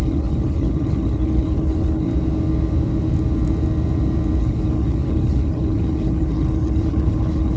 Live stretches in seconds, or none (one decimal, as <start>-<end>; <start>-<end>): 2.1-4.4